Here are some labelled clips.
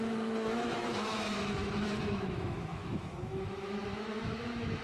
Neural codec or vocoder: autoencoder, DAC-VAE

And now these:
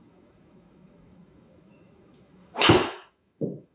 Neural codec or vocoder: autoencoder, DAC-VAE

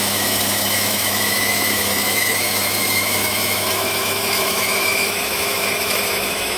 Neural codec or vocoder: autoencoder, DAC-VAE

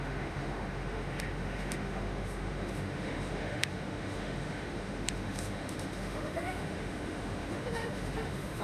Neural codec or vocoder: autoencoder, DAC-VAE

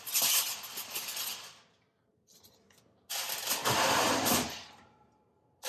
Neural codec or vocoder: none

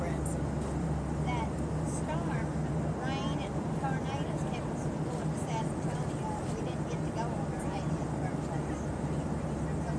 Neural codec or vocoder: none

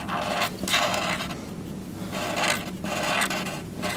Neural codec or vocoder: none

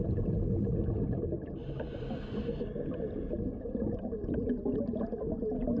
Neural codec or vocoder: none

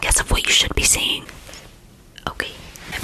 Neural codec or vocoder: none